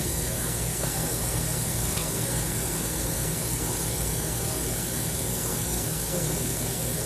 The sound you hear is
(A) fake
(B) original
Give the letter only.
A